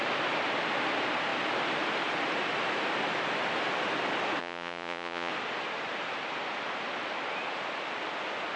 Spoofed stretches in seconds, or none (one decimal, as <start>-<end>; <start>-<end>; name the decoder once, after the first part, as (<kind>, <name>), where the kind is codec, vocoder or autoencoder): 4.4-5.3 (vocoder, Vocos)